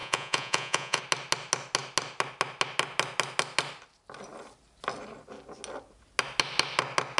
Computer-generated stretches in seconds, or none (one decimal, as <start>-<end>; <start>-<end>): 0.0-1.0